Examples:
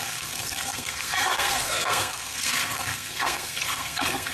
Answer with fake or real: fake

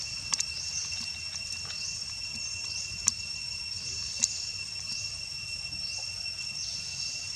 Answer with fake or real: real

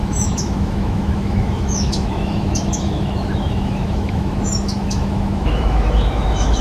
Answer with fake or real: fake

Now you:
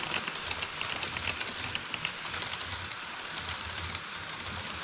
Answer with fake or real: real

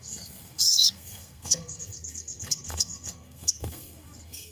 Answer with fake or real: fake